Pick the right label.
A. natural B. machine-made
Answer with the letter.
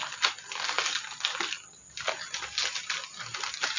A